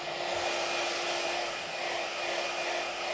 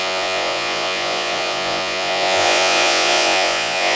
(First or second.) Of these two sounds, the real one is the first